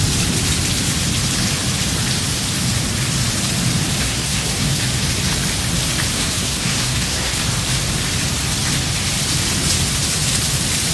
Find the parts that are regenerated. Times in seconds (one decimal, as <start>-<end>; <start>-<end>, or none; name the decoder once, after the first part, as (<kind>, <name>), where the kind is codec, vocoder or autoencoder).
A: 4.0-4.8 (codec, SNAC); 6.1-7.4